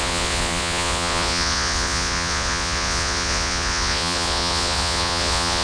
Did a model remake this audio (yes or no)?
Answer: yes